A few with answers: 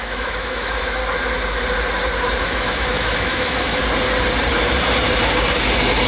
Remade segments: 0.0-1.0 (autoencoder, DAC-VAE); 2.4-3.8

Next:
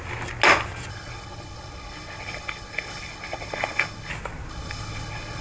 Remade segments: 0.9-4.1 (codec, HILCodec); 4.5-5.4